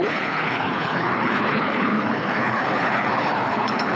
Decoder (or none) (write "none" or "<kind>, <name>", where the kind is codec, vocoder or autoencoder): codec, HILCodec